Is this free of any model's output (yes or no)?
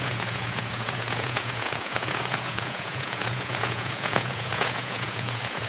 no